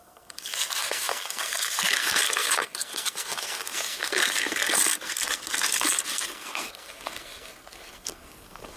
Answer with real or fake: fake